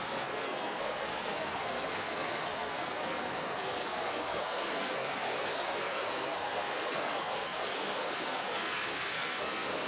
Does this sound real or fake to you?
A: fake